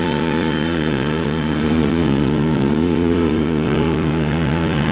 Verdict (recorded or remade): remade